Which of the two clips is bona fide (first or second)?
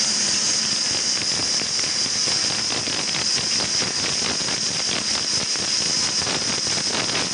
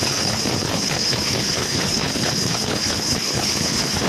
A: first